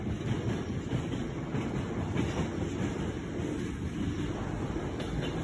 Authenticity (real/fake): fake